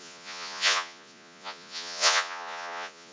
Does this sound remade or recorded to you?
remade